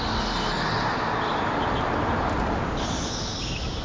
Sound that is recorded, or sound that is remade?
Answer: recorded